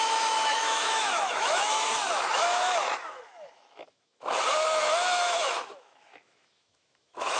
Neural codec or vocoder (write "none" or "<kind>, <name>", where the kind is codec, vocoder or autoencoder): autoencoder, DAC-VAE